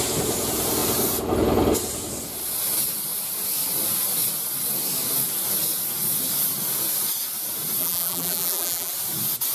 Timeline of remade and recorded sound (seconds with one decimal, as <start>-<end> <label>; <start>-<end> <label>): 0.0-7.8 recorded; 7.8-8.9 remade; 8.9-9.5 recorded